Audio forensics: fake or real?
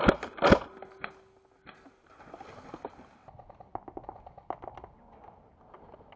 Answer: real